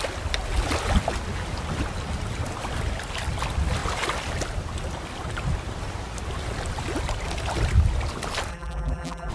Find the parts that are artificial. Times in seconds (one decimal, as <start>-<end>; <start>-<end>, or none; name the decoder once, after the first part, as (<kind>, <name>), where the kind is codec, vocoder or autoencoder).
8.5-9.3 (vocoder, BigVGAN v2)